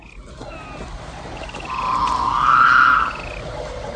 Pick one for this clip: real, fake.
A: real